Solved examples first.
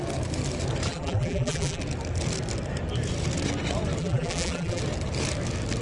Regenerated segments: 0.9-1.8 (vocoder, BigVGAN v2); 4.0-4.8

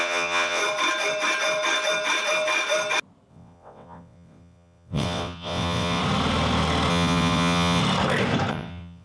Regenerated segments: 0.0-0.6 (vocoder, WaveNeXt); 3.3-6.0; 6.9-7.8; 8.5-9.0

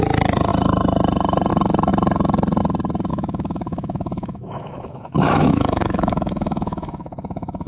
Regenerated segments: 3.1-7.7 (autoencoder, DAC-VAE)

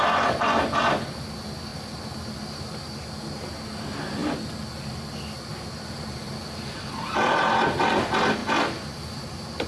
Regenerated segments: 1.7-2.2 (vocoder, BigVGAN v2); 4.2-5.1; 5.5-7.4; 8.4-9.7